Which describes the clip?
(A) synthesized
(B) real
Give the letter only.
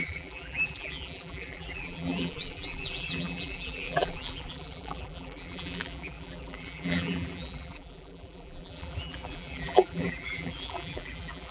A